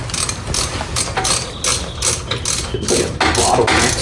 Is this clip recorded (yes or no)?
yes